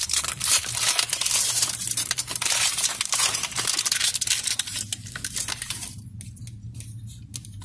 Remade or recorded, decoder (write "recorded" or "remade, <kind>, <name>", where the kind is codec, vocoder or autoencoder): remade, vocoder, BigVGAN v2